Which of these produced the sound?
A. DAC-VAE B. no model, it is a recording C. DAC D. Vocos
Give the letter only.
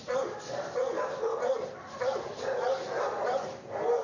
B